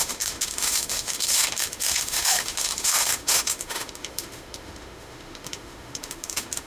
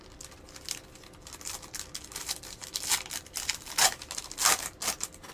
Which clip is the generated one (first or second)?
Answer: first